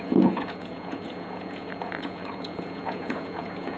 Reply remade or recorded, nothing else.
remade